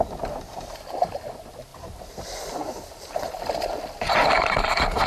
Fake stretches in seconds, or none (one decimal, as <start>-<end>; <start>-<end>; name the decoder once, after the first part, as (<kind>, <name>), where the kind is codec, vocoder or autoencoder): 1.7-5.1 (vocoder, BigVGAN v2)